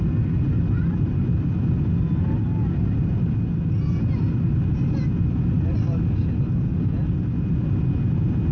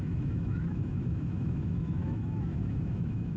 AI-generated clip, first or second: second